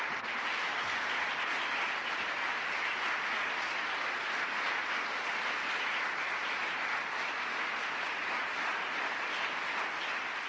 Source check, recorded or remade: recorded